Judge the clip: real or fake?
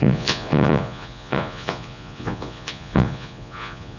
fake